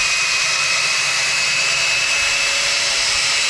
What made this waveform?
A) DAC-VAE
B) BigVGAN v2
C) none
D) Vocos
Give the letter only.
B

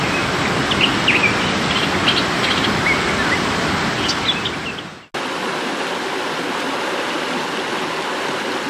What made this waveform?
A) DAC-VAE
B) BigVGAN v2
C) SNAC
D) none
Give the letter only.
D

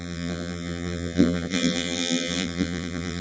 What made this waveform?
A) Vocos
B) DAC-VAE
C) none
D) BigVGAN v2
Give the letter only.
D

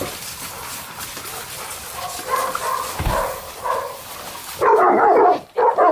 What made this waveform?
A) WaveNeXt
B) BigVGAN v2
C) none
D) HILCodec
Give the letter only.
C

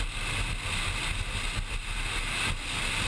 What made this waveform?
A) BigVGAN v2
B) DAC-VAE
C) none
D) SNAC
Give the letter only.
C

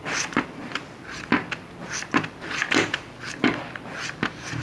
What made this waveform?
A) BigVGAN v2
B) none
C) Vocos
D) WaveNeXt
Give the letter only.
A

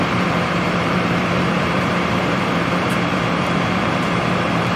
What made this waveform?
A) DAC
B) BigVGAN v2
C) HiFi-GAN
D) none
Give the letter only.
B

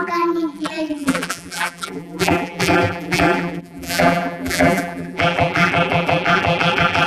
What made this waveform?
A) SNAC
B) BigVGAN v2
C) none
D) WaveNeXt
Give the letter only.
B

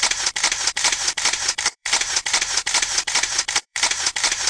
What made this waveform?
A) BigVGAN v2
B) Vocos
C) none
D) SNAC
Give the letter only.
A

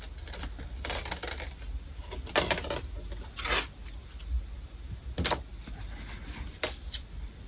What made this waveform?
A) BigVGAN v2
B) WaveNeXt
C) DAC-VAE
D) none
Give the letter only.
D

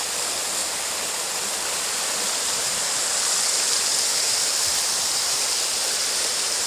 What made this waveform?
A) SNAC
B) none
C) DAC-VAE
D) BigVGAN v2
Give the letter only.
D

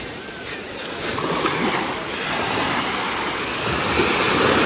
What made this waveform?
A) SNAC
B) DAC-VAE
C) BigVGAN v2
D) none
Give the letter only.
D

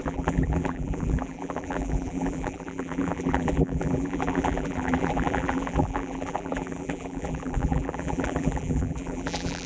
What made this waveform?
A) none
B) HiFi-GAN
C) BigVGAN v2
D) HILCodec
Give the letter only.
C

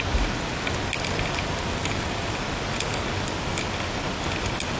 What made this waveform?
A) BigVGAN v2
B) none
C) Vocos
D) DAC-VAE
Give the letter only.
B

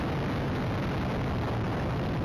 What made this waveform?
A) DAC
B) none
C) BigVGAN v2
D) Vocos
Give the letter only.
B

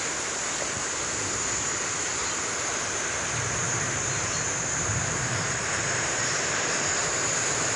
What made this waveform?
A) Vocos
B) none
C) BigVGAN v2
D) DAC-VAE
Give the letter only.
C